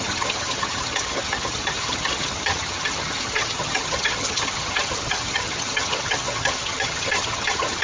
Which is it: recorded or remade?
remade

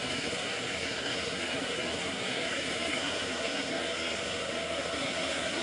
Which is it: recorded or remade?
remade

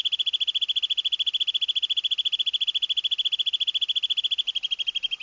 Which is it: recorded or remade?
recorded